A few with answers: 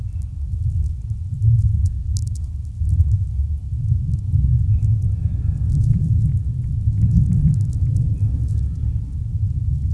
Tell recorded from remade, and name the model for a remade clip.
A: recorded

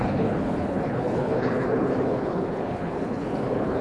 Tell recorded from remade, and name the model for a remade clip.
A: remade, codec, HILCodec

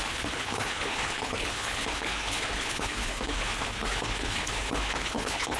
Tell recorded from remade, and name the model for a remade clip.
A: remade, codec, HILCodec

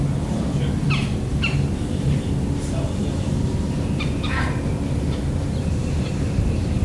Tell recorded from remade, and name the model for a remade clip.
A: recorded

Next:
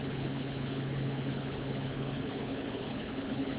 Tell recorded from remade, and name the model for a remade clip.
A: remade, codec, HILCodec